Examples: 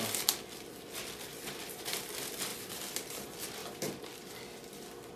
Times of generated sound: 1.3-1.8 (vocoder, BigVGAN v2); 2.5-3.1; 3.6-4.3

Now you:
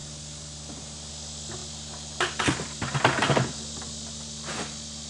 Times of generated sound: 0.0-1.1 (vocoder, BigVGAN v2); 1.6-3.0